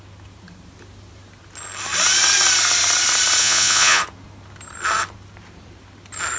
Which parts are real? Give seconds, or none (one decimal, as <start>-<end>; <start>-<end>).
0.0-3.4; 4.0-6.4